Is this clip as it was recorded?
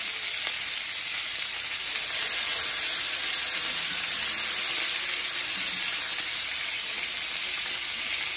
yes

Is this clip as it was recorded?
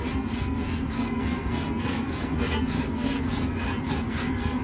no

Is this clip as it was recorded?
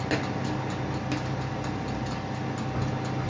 yes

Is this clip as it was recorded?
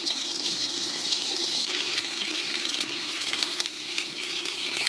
no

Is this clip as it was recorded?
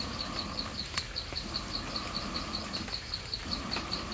yes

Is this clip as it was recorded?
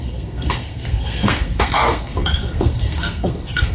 no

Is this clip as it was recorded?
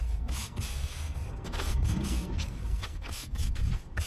no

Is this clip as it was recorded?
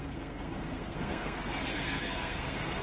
no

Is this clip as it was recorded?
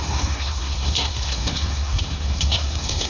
no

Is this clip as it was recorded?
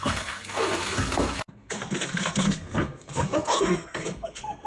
no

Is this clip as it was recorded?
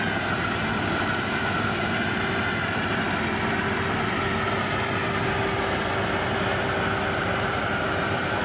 yes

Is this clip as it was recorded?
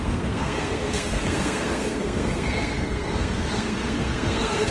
no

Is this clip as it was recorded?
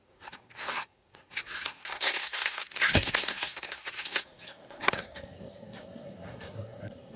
no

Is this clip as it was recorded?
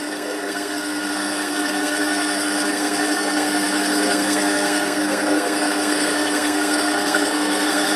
no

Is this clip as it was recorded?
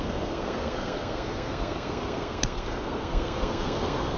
no